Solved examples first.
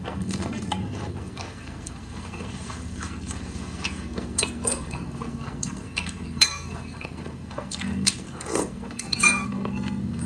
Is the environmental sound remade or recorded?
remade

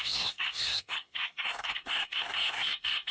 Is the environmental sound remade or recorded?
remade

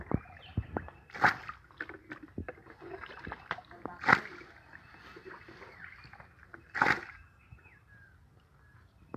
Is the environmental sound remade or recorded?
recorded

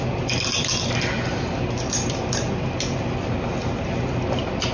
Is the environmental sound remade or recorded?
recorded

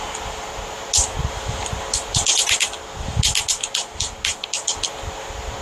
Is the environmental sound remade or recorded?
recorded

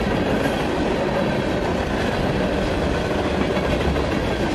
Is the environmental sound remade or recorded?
recorded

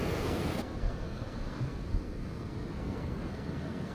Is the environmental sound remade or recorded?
remade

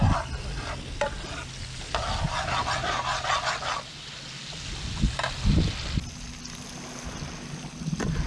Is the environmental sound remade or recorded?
recorded